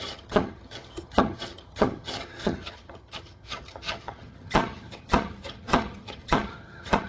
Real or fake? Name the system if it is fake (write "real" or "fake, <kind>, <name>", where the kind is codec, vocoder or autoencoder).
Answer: fake, vocoder, HiFi-GAN